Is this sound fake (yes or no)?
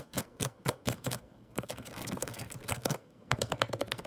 yes